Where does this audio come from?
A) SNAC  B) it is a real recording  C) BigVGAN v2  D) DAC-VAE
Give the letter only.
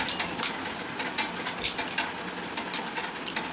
B